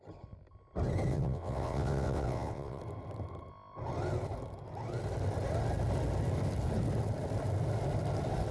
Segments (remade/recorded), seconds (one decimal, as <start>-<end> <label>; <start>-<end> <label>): 0.0-1.1 recorded; 1.1-2.8 remade; 2.8-8.5 recorded